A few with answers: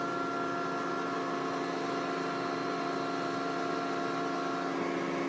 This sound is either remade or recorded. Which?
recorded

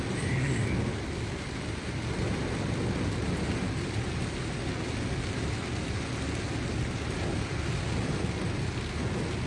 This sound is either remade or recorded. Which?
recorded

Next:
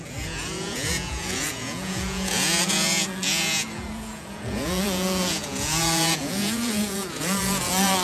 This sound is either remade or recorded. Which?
remade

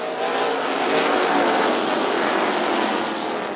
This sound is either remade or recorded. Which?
recorded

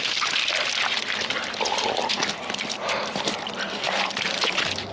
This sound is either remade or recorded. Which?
recorded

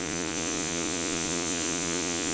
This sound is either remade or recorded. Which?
remade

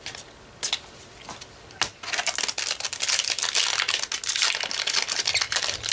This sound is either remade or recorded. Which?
recorded